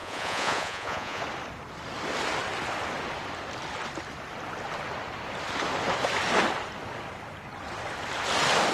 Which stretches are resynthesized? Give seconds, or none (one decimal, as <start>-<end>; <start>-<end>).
0.0-1.2